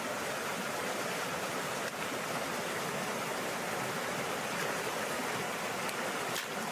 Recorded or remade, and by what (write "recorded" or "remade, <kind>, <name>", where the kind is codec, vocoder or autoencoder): recorded